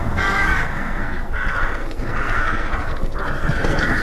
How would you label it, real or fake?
fake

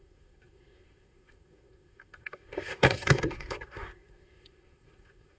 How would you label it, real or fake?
fake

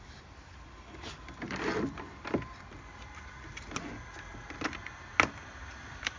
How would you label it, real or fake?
real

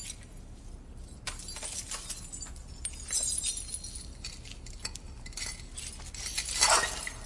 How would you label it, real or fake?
real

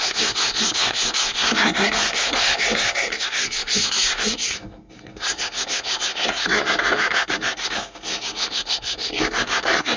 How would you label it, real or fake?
fake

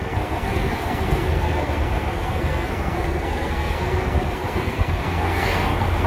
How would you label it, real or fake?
fake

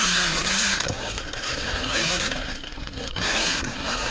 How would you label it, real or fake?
fake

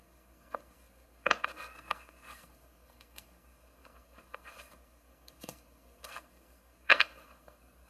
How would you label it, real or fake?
fake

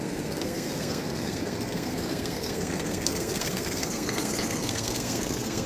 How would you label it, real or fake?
fake